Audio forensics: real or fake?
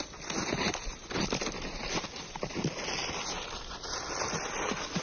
real